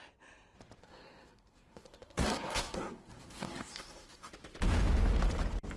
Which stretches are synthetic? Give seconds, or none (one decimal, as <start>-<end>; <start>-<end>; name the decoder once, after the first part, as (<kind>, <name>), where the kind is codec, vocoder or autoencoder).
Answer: 0.8-4.3 (codec, SNAC)